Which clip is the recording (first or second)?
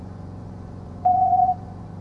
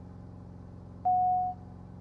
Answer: second